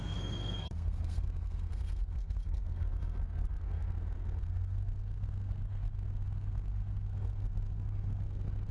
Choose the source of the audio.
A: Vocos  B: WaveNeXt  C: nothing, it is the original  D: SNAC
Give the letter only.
D